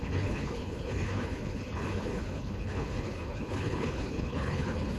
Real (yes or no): no